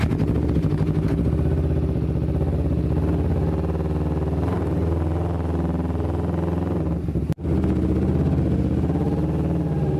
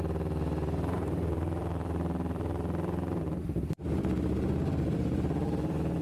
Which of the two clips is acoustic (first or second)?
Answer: first